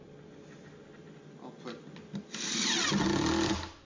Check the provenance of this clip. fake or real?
real